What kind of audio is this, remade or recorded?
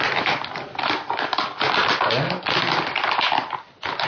recorded